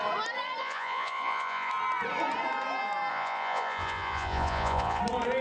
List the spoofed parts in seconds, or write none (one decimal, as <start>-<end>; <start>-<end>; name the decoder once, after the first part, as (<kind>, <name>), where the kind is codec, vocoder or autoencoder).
0.6-1.7 (vocoder, Vocos); 3.1-5.0